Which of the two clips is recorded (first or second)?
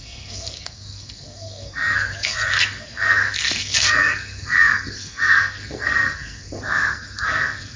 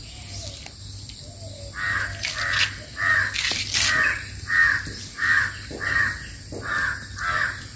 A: second